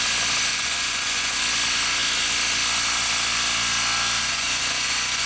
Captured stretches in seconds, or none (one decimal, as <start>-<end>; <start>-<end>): 0.0-0.5; 1.4-4.2